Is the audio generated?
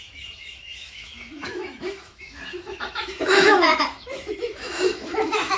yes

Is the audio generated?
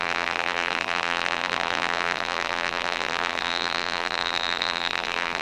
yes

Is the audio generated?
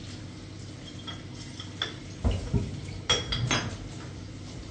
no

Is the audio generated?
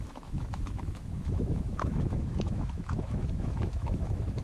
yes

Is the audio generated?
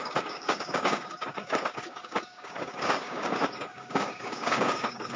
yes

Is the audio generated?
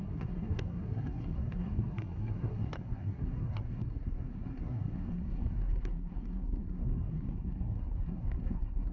yes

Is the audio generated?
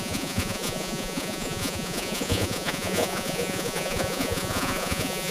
yes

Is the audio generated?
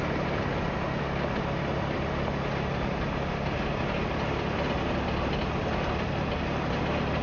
no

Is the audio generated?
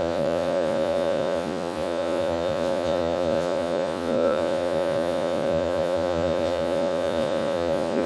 yes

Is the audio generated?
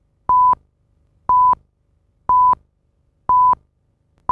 no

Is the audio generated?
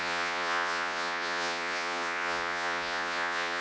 yes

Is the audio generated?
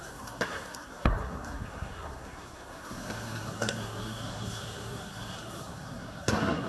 yes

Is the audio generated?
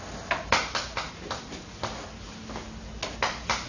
no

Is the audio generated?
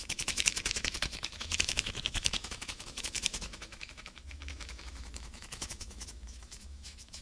yes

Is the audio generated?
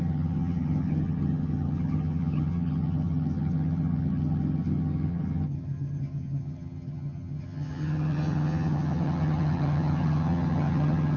yes